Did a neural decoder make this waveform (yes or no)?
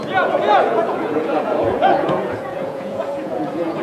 yes